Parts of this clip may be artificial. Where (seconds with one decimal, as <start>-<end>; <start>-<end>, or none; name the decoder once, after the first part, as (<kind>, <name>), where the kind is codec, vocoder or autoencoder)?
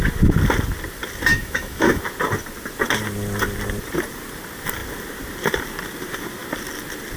1.3-2.0 (autoencoder, DAC-VAE)